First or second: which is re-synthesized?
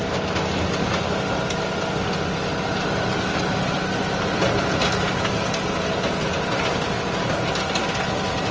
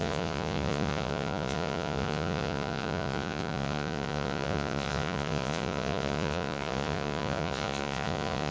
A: second